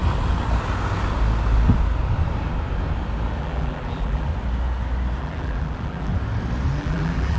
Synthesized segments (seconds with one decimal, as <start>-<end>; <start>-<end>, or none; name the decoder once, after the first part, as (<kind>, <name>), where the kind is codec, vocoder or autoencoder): 3.4-4.3 (vocoder, BigVGAN v2); 5.2-6.1; 6.8-7.4